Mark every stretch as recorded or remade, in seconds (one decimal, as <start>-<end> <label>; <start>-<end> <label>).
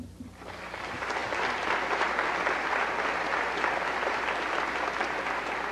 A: 0.0-5.7 recorded